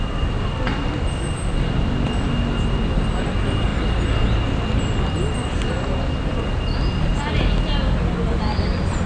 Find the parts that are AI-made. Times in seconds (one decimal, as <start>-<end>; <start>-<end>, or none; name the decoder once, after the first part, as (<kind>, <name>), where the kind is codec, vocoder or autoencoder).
none